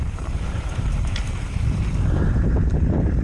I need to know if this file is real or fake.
fake